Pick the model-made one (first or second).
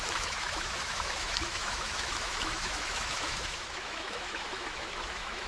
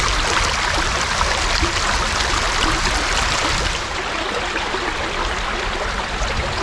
first